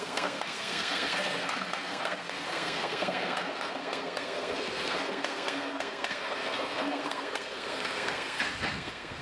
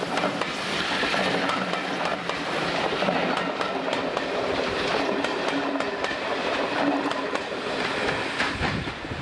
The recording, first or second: second